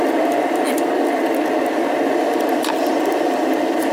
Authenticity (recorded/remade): remade